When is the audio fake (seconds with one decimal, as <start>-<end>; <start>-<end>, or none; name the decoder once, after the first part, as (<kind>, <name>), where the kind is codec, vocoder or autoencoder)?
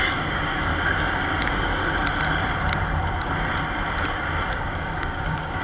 0.0-0.7 (codec, DAC); 1.4-1.8; 4.5-5.6